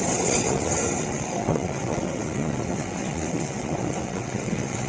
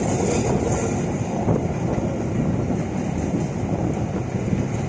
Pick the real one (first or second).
second